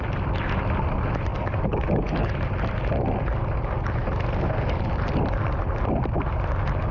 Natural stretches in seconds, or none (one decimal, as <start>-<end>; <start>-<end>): 0.0-1.3; 2.3-6.9